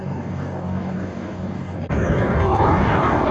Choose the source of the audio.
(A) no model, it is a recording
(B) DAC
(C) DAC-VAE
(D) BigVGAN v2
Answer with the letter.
B